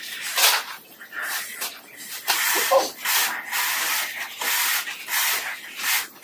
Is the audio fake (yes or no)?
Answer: no